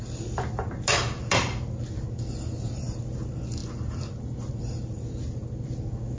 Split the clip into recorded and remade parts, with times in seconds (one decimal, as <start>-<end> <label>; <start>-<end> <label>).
0.0-6.2 recorded